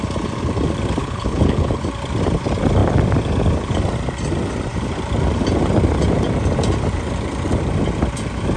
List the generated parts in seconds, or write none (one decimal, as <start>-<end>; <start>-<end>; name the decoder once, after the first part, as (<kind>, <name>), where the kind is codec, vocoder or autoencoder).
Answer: 1.0-1.8 (codec, HILCodec)